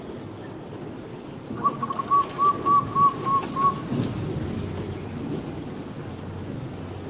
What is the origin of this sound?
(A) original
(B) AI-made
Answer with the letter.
A